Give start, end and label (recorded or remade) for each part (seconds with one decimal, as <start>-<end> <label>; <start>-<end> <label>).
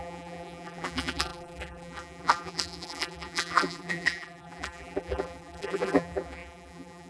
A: 0.0-7.1 remade